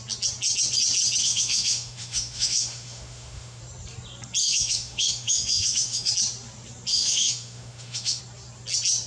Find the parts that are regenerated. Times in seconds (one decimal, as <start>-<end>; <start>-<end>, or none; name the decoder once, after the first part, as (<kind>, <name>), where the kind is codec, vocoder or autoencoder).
1.2-3.6 (autoencoder, DAC-VAE); 4.4-6.1; 6.9-8.2